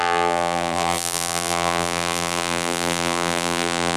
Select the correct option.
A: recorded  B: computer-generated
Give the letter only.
B